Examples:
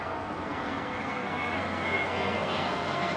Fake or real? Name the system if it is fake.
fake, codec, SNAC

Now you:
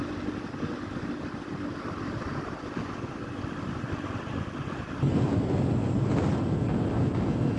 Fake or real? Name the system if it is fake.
real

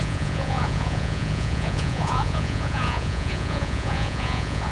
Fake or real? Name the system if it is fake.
fake, vocoder, Vocos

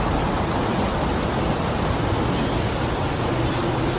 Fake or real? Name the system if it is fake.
real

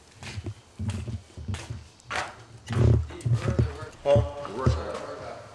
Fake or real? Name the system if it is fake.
real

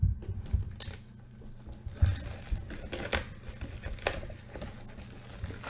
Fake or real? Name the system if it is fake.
real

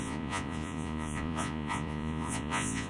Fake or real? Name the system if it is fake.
fake, vocoder, Vocos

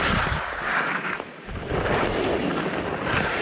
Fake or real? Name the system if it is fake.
real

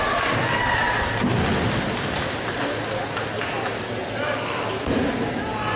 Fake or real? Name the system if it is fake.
real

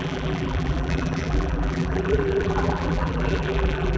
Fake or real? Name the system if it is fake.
fake, vocoder, BigVGAN v2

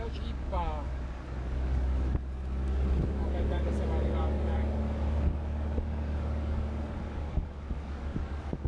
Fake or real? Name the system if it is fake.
fake, codec, DAC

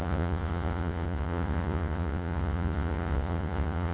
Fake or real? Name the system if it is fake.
fake, vocoder, Vocos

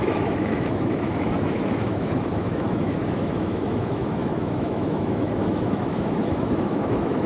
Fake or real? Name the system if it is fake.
fake, autoencoder, DAC-VAE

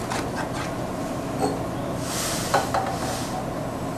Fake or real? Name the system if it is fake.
real